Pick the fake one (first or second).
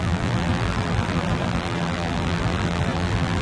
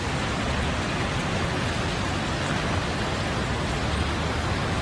first